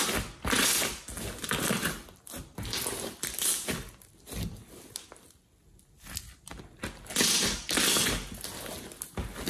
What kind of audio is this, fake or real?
real